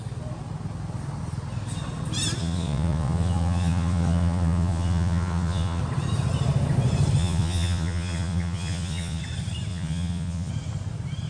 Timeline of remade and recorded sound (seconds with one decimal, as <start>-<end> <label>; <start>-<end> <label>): 0.0-2.4 recorded; 2.4-5.8 remade; 5.8-7.2 recorded; 7.2-9.2 remade; 9.2-9.7 recorded; 9.7-10.5 remade; 10.5-11.3 recorded